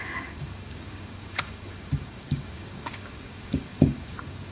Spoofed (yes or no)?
yes